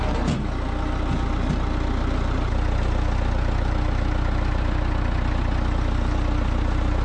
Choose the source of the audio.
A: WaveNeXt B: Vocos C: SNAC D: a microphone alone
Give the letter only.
D